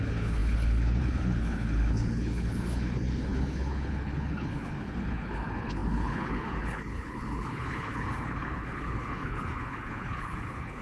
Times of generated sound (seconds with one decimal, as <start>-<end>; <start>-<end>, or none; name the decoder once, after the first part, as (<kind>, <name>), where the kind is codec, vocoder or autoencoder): 0.0-10.8 (codec, HILCodec)